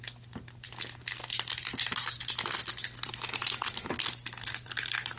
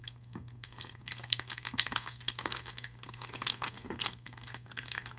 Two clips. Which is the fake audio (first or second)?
second